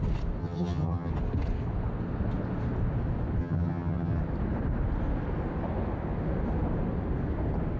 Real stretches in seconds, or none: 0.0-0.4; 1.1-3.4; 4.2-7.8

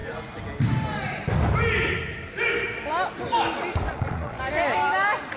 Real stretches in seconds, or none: 0.0-3.9; 4.4-5.4